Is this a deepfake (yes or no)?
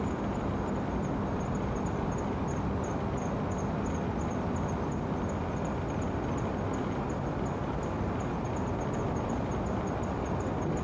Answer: no